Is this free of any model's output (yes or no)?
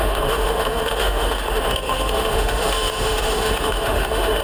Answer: no